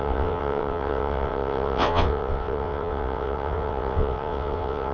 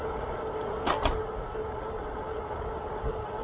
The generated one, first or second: first